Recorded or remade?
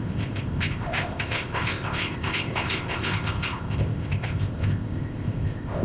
remade